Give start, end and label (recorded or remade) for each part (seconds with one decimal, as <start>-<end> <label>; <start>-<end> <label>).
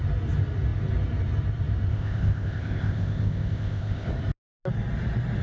0.0-1.9 recorded; 1.9-4.1 remade; 4.1-5.4 recorded